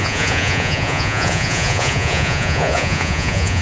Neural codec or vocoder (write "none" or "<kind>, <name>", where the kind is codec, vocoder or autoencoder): vocoder, Vocos